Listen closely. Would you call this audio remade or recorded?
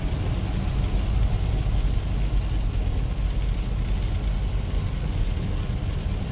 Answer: recorded